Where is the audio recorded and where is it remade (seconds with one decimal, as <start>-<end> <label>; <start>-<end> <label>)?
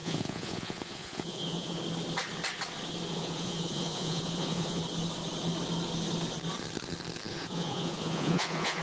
0.0-1.8 remade; 1.8-3.1 recorded; 3.1-4.8 remade; 4.8-7.3 recorded; 7.3-8.8 remade